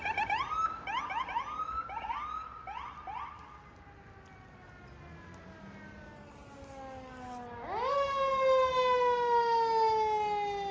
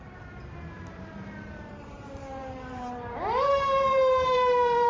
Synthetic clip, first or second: second